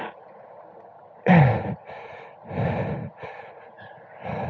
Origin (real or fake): real